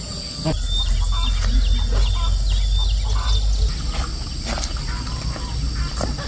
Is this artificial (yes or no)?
no